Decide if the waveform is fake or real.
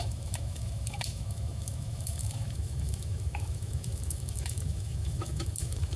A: fake